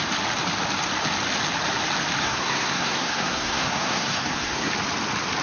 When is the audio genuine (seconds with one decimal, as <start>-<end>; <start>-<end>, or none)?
0.0-2.2; 4.7-5.4